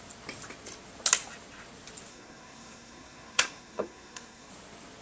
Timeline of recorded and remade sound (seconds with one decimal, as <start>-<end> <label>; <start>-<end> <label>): 0.0-2.1 recorded; 2.1-4.5 remade; 4.5-5.0 recorded